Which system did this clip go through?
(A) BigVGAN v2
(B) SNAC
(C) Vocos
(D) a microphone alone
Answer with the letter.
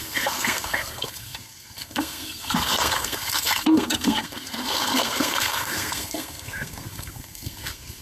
B